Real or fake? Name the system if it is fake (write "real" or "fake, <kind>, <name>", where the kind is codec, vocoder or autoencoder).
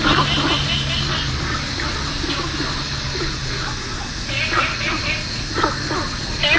real